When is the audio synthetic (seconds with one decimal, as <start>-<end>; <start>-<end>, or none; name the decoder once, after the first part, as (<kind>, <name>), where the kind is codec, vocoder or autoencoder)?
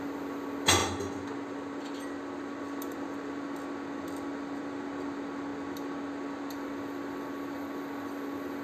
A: none